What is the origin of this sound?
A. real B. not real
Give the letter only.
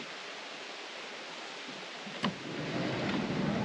A